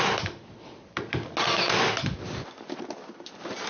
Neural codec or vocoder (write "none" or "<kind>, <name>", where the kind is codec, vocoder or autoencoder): none